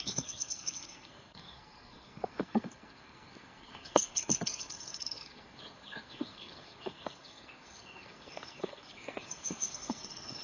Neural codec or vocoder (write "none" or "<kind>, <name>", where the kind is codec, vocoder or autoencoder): codec, SNAC